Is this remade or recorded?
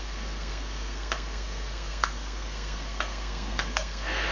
remade